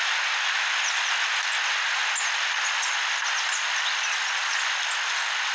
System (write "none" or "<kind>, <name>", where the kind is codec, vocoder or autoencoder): none